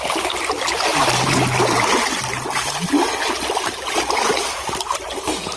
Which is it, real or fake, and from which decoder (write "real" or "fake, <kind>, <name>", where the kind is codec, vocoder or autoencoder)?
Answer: real